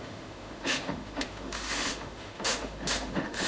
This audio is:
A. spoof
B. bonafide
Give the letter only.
A